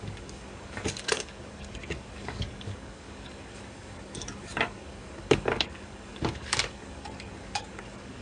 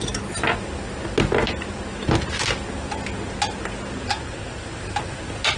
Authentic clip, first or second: second